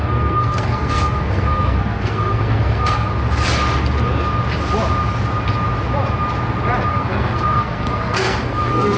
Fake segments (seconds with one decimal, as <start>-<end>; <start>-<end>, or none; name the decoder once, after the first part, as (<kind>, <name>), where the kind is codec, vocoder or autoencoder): 0.0-3.1 (codec, SNAC); 6.9-9.0